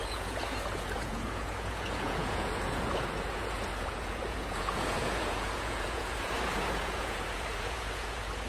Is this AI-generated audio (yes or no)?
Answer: yes